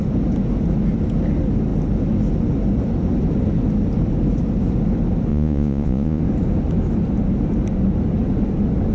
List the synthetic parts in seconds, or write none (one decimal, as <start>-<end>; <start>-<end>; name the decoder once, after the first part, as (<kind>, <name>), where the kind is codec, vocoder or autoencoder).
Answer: 5.3-6.2 (vocoder, Vocos)

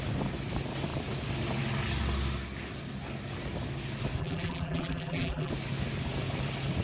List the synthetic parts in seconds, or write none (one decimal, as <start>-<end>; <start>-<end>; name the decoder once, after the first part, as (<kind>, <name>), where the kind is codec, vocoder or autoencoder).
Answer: 4.2-5.5 (vocoder, BigVGAN v2)